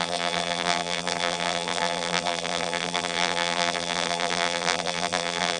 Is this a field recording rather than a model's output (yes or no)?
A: no